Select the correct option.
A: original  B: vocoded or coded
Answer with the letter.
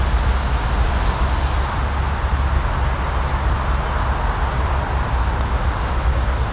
A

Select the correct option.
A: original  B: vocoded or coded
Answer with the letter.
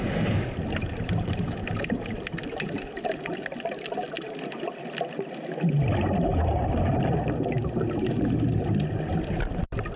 A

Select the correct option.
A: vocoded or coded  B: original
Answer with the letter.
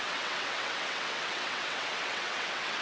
A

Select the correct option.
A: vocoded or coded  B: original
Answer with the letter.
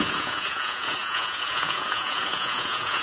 A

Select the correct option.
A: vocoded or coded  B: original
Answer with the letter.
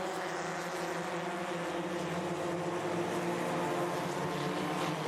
B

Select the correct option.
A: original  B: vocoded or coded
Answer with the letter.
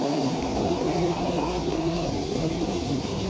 B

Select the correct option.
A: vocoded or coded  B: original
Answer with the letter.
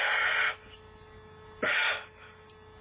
B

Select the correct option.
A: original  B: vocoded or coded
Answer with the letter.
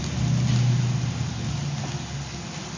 A